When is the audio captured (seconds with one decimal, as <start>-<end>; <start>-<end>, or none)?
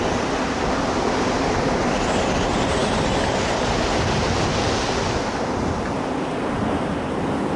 0.0-7.6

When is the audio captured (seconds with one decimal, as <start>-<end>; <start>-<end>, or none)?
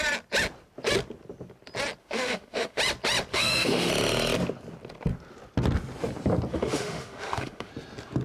0.0-2.0; 2.8-3.3; 3.9-6.5; 7.7-8.2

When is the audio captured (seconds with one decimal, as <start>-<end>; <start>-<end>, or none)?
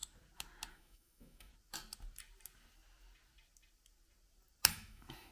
0.0-0.7; 1.5-4.7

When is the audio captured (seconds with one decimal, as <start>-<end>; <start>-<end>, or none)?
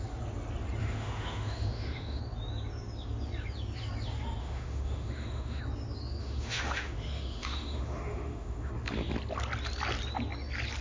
0.0-0.8; 2.2-4.4; 5.6-6.2; 8.7-10.8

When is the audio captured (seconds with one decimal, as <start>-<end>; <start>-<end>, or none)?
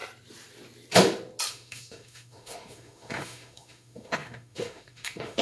0.0-1.5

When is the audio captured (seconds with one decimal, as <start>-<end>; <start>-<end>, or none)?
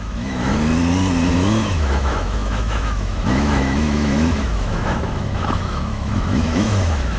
0.5-1.3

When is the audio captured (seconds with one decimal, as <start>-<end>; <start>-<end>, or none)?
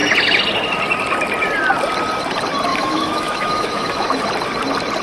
0.0-2.7; 4.2-5.0